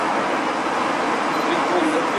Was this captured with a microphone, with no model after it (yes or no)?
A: yes